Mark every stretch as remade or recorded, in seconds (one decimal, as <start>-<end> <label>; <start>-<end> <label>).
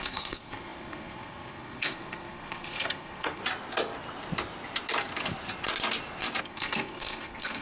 0.0-3.4 remade; 3.4-6.4 recorded; 6.4-7.6 remade